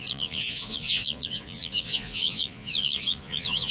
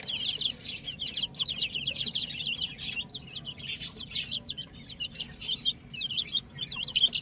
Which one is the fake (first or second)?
first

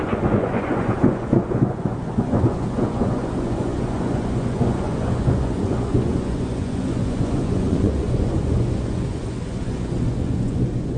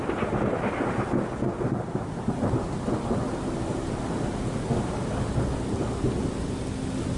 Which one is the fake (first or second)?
first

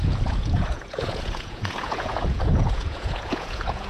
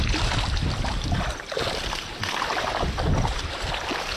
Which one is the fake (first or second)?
first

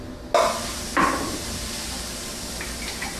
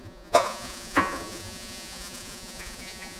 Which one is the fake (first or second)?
second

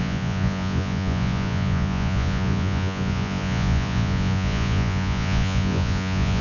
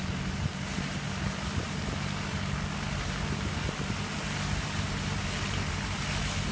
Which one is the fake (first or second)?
first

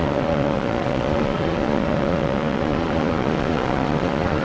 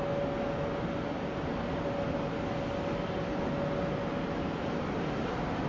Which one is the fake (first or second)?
first